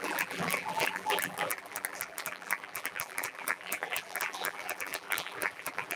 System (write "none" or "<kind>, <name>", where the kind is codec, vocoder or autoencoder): vocoder, BigVGAN v2